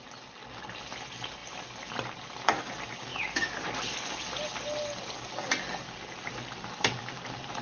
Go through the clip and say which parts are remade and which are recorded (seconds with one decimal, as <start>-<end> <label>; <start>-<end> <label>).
0.0-7.6 recorded